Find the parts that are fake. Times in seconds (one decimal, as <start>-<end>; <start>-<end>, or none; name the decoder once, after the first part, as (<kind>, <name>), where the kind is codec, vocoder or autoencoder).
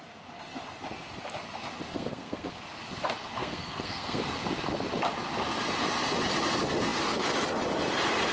1.9-2.6 (codec, SNAC); 3.4-4.2